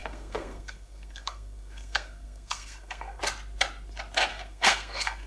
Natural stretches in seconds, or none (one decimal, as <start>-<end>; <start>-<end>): 3.2-4.3